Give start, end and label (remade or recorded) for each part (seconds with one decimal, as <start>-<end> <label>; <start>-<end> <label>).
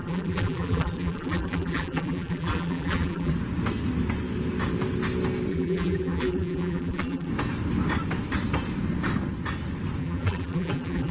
0.0-3.3 remade; 3.3-5.5 recorded; 5.5-7.3 remade; 7.3-10.0 recorded; 10.0-11.1 remade